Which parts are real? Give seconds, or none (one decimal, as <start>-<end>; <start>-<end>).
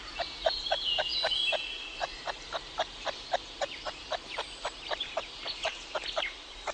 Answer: 0.0-6.7